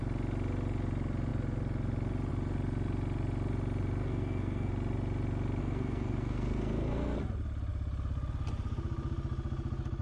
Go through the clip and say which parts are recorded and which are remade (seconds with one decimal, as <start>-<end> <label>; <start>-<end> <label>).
0.0-4.0 recorded; 4.0-4.7 remade; 4.7-5.6 recorded; 5.6-7.2 remade; 7.2-10.0 recorded